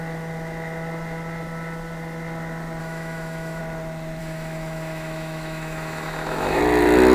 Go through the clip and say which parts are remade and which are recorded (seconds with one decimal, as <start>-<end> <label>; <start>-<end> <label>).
0.0-2.8 recorded; 2.8-3.6 remade; 3.6-4.2 recorded; 4.2-6.6 remade; 6.6-7.1 recorded